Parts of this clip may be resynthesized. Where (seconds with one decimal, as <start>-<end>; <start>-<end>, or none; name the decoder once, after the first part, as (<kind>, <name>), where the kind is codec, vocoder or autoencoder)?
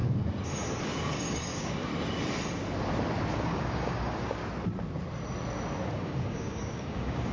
0.8-1.9 (codec, DAC); 3.3-4.4; 6.0-7.3